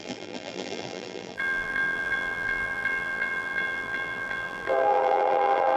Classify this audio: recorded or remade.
remade